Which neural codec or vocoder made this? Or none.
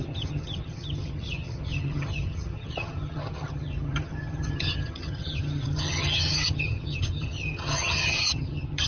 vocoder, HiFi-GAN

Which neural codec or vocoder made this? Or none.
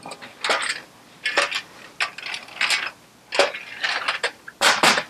none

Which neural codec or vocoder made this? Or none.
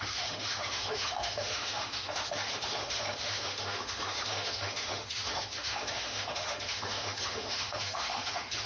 autoencoder, DAC-VAE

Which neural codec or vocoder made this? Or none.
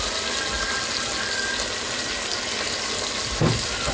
none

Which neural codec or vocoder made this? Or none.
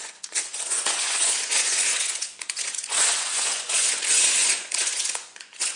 vocoder, Vocos